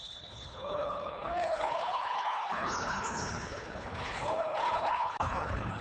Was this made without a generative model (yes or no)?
no